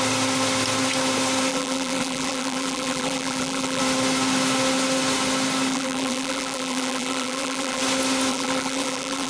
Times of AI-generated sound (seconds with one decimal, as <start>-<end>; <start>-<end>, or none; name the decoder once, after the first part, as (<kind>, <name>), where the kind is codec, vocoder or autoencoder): 1.5-3.8 (vocoder, BigVGAN v2); 5.7-7.8; 8.3-9.3